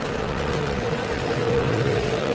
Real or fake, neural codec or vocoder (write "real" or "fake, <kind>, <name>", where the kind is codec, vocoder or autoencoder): fake, vocoder, WaveNeXt